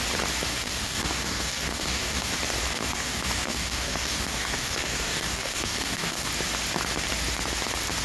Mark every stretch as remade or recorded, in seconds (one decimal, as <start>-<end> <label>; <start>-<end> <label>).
0.0-0.5 recorded; 0.5-2.3 remade; 2.3-2.7 recorded; 2.7-6.3 remade; 6.3-8.0 recorded